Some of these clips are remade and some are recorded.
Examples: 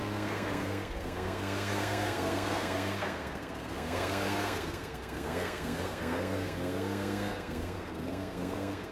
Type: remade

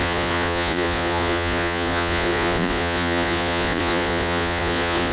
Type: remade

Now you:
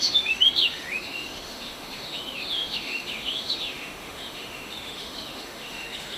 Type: remade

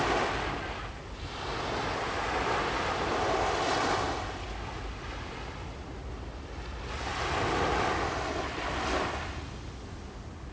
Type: recorded